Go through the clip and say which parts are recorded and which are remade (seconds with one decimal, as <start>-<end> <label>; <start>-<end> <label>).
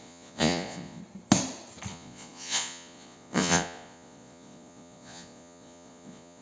0.0-1.0 remade; 1.0-1.9 recorded; 1.9-6.4 remade